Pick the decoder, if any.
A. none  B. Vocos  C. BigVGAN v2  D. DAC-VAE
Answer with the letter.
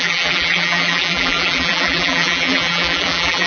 C